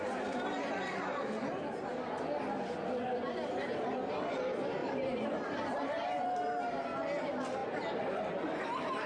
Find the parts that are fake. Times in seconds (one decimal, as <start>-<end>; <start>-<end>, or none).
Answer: 4.8-6.8